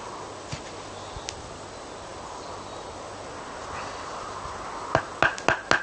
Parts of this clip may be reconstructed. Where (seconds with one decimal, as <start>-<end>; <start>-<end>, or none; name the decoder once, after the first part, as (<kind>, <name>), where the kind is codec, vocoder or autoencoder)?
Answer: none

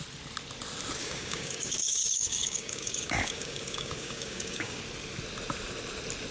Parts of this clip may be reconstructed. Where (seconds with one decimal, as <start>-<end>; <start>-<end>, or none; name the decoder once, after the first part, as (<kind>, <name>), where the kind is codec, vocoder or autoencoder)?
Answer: 1.0-4.8 (codec, DAC)

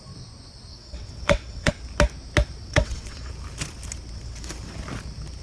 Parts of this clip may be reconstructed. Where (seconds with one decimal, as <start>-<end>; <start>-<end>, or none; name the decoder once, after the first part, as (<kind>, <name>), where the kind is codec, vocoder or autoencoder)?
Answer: 0.7-1.7 (vocoder, WaveNeXt); 2.6-3.3

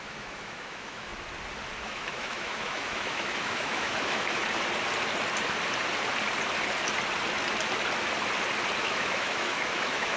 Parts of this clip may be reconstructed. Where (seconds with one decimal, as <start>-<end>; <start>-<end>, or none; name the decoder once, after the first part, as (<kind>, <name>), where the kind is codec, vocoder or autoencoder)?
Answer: 0.0-1.1 (autoencoder, DAC-VAE); 1.8-4.4; 8.8-10.2

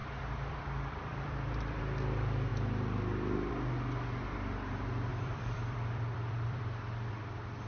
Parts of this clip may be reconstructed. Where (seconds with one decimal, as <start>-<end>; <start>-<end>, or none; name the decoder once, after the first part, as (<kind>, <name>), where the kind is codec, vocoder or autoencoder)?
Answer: 0.0-1.8 (vocoder, BigVGAN v2); 5.1-7.2

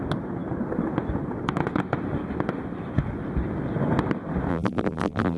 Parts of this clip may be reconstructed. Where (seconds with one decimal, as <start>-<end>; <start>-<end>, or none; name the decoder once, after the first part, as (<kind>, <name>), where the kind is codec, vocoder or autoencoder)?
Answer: 4.5-5.4 (vocoder, BigVGAN v2)

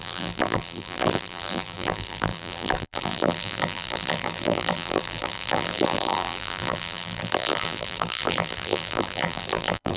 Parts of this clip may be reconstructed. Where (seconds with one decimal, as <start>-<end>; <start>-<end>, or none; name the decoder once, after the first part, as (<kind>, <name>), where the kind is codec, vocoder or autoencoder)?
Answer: 0.0-10.0 (vocoder, BigVGAN v2)